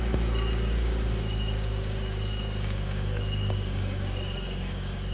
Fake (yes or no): yes